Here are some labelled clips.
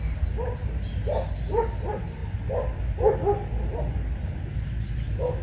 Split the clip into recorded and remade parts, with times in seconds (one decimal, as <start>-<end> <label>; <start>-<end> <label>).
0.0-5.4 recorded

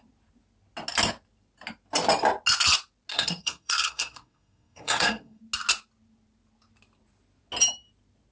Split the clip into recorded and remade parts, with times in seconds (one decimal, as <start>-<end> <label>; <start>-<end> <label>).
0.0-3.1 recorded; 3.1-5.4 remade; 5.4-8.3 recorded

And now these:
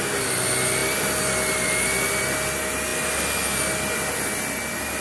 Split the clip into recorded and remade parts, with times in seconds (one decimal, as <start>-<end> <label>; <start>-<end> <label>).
0.0-5.0 recorded

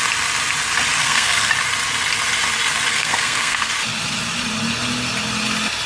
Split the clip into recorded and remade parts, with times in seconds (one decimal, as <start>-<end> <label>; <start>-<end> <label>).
0.0-1.0 recorded; 1.0-1.5 remade; 1.5-2.9 recorded; 2.9-3.7 remade; 3.7-5.9 recorded